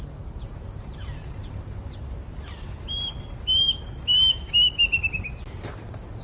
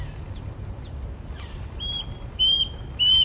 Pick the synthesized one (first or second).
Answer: second